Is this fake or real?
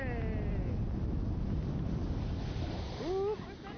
real